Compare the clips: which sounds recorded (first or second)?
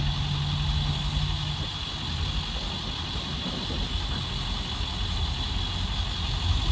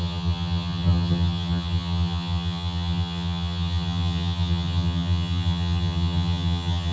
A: first